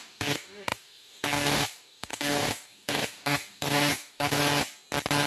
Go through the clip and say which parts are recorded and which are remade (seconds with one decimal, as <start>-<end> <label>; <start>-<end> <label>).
0.0-4.4 remade; 4.4-5.3 recorded